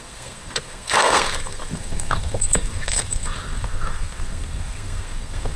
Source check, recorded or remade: remade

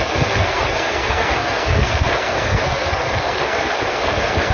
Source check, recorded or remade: remade